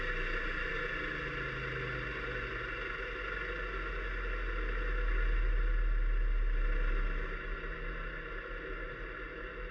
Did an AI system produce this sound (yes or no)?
no